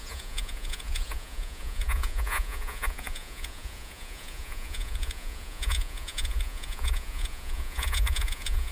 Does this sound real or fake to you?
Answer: fake